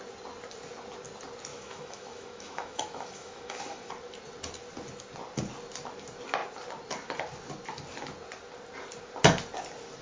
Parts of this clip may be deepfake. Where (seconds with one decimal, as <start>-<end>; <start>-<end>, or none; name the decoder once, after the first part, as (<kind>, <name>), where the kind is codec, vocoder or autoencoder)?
1.5-3.9 (autoencoder, DAC-VAE)